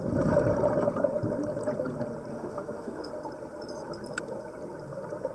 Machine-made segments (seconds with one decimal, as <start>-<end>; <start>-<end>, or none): 2.3-3.1